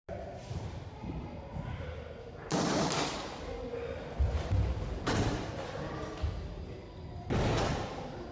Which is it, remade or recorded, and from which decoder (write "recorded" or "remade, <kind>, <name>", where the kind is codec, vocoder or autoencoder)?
recorded